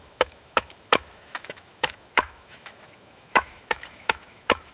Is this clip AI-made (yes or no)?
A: yes